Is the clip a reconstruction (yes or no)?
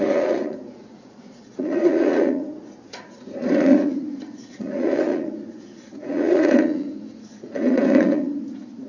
yes